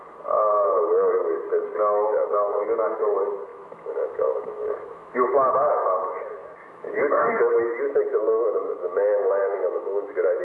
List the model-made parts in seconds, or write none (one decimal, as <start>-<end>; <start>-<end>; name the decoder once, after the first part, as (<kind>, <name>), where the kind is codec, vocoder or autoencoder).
3.5-5.8 (autoencoder, DAC-VAE); 6.4-8.5; 9.4-10.4